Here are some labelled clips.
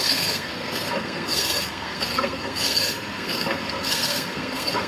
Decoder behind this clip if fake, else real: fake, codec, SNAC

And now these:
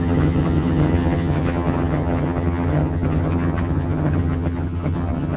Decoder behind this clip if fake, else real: fake, vocoder, HiFi-GAN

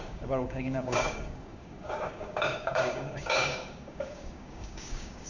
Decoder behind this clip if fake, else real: fake, codec, DAC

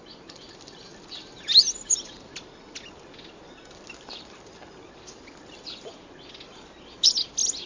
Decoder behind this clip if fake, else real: real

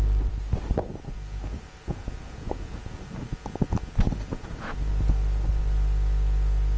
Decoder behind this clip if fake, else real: real